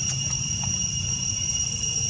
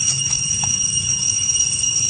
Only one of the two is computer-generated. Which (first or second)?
second